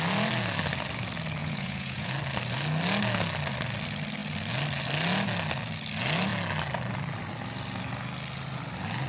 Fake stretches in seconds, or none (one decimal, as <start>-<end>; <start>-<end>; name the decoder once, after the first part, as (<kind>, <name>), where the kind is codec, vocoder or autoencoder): 1.4-2.1 (vocoder, Vocos)